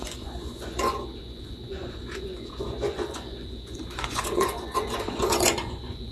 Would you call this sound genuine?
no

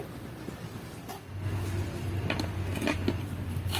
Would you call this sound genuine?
yes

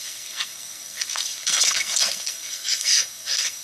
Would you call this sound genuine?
no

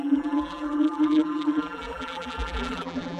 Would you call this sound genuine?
no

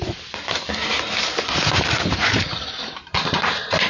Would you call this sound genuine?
yes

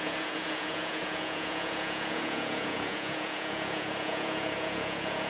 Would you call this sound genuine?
no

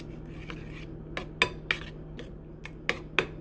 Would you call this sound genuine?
yes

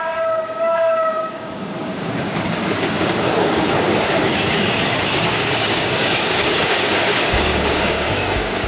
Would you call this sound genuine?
no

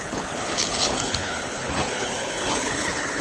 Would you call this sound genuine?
no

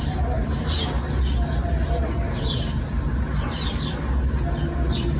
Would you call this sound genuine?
yes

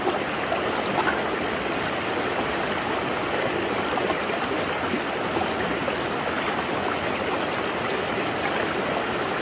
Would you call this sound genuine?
yes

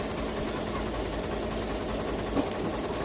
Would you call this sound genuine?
yes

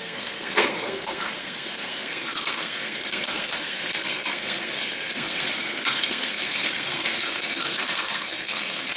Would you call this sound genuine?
no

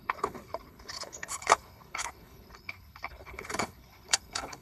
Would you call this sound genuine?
no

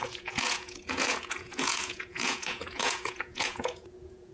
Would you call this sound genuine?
no